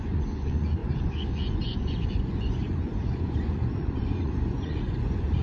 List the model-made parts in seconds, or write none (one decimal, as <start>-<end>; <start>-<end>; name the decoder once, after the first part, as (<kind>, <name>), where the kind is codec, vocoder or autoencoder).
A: 0.0-5.4 (vocoder, Vocos)